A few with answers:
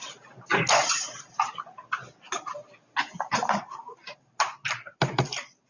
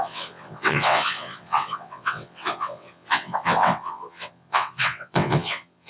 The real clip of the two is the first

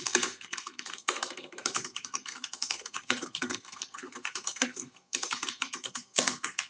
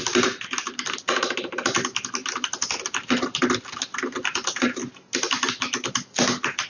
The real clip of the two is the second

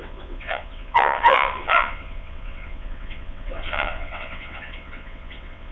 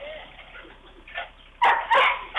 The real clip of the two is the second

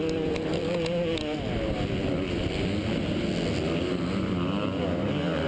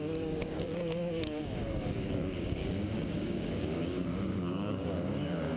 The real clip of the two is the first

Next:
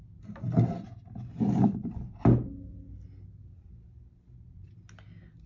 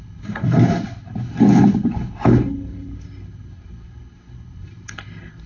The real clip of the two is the first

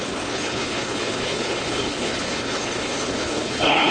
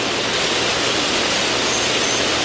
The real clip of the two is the second